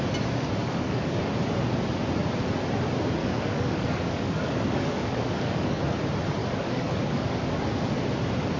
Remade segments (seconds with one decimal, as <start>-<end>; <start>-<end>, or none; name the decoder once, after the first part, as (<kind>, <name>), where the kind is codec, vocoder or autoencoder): 0.6-1.3 (codec, DAC); 3.2-5.8; 6.4-8.0